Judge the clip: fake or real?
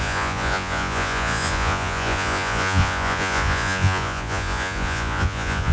fake